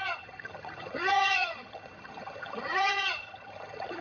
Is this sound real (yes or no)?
no